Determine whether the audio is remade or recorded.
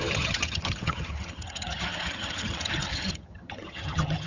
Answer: remade